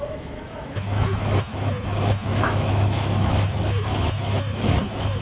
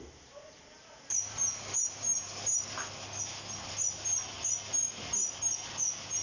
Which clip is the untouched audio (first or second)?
second